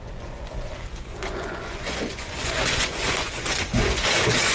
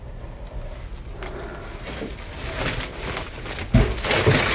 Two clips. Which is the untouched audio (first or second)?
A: second